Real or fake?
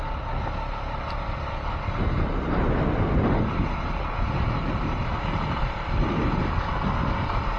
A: real